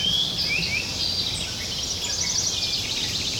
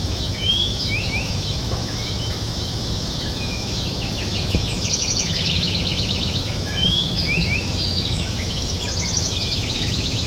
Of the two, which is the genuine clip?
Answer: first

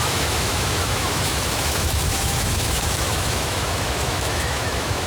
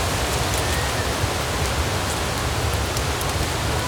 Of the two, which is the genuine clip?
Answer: second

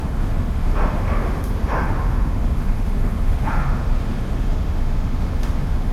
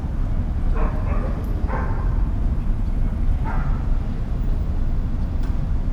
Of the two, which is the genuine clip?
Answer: second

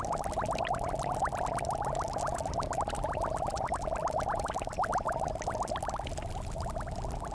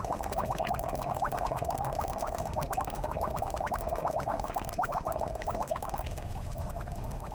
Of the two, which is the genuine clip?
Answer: first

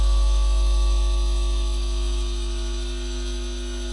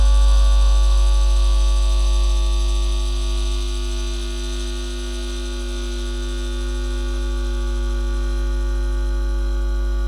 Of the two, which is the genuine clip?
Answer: second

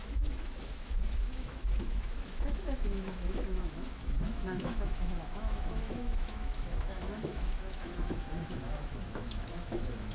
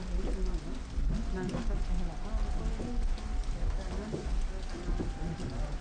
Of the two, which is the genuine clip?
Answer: second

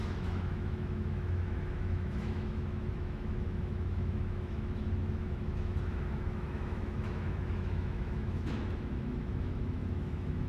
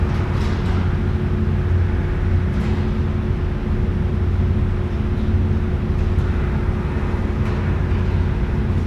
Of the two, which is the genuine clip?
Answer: second